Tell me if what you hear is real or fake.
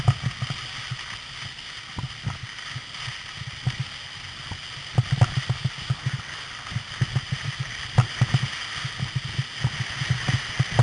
real